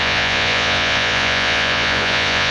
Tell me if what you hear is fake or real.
fake